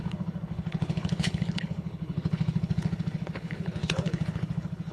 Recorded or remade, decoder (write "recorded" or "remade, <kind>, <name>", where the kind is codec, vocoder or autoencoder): remade, codec, HILCodec